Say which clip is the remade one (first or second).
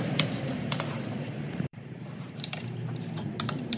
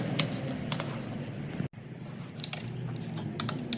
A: first